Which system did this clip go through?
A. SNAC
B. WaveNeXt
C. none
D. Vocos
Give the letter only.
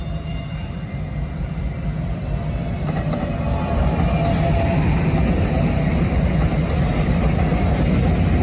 C